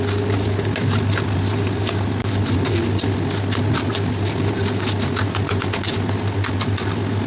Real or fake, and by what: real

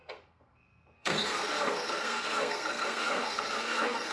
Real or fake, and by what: fake, codec, SNAC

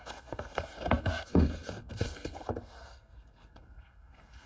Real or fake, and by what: fake, codec, SNAC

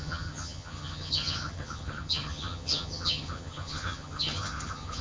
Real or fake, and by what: fake, vocoder, HiFi-GAN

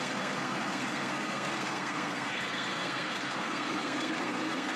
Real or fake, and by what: fake, codec, SNAC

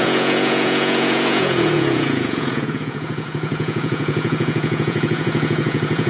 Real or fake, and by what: fake, vocoder, Vocos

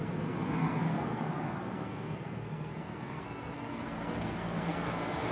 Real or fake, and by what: fake, codec, SNAC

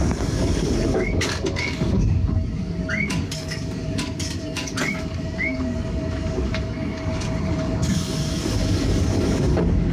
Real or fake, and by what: fake, codec, DAC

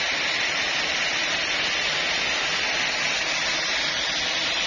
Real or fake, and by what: real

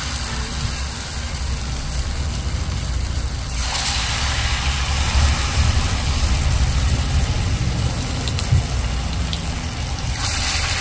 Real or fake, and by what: real